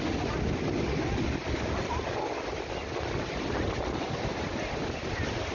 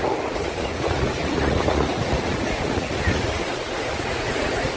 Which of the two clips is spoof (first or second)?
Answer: second